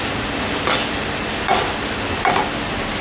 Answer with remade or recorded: recorded